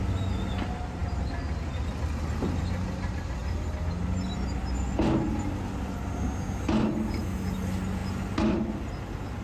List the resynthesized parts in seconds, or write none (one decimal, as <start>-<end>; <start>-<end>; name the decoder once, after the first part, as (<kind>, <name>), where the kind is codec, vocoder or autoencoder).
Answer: none